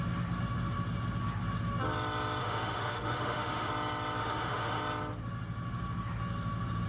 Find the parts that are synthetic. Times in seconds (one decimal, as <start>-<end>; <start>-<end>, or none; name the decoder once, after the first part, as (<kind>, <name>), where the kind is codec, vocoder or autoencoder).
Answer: 2.4-3.7 (autoencoder, DAC-VAE); 4.2-4.8